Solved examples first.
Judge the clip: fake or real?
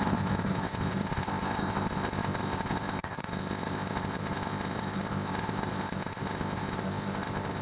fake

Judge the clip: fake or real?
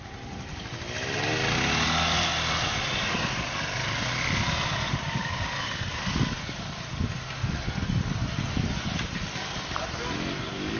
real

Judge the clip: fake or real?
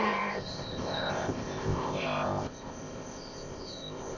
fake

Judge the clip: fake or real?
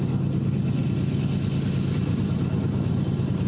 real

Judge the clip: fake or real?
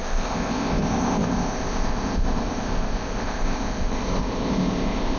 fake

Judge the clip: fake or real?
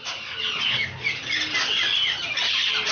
real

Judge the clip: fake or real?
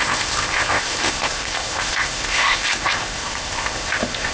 fake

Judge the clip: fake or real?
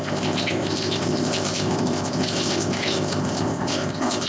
fake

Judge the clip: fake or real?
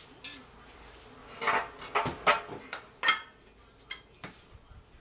real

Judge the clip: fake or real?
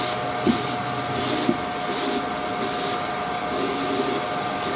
real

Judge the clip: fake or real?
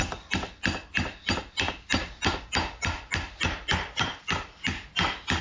real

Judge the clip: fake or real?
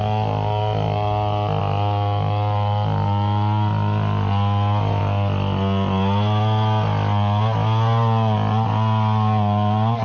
real